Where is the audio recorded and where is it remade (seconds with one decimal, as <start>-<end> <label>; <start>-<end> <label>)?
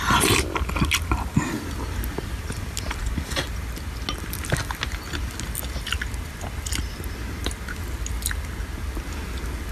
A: 0.0-9.7 recorded